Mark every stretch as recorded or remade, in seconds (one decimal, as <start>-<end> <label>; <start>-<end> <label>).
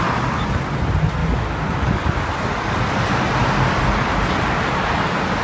0.0-5.4 recorded